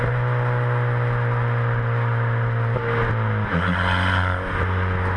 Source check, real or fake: real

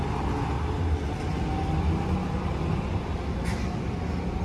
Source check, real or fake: real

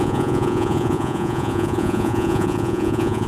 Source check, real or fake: fake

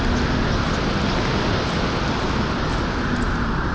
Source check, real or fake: real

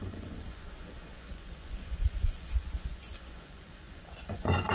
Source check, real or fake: fake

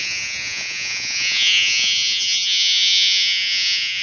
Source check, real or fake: fake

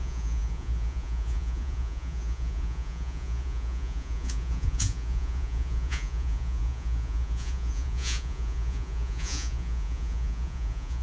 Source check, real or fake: fake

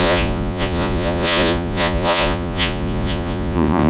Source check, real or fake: fake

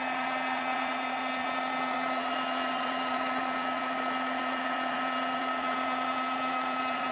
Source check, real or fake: fake